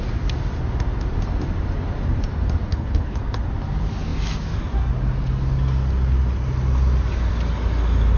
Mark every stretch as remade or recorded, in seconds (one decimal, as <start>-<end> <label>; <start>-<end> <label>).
0.0-2.7 recorded; 2.7-3.2 remade; 3.2-8.2 recorded

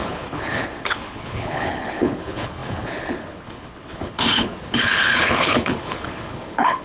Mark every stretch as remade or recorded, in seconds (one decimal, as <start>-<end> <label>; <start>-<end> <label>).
0.0-6.8 remade

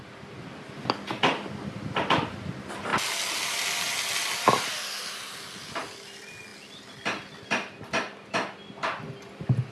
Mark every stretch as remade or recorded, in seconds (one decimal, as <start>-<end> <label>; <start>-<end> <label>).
0.0-9.7 recorded

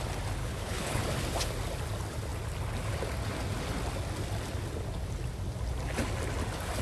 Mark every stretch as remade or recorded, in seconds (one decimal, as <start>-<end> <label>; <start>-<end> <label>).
0.0-0.4 recorded; 0.4-1.0 remade; 1.0-6.8 recorded

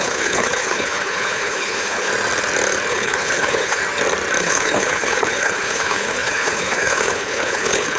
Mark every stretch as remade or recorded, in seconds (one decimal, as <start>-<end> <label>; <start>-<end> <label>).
0.0-2.1 remade; 2.1-2.9 recorded; 2.9-3.8 remade; 3.8-4.4 recorded; 4.4-8.0 remade